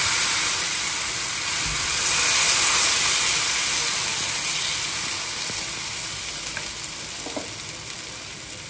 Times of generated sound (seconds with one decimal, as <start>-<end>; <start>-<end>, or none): none